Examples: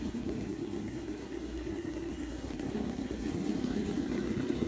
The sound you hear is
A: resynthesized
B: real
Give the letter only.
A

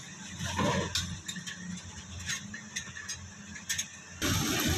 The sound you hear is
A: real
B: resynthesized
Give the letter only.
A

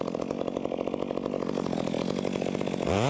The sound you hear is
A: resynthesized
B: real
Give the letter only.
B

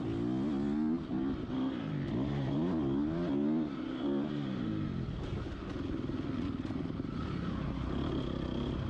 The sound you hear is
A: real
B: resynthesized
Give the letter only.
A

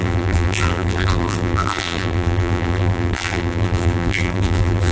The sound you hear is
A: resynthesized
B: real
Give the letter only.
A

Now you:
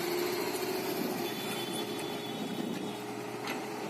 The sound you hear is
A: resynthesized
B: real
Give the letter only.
B